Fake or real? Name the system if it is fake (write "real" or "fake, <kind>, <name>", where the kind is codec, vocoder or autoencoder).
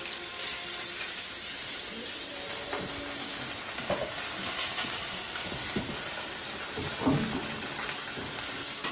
real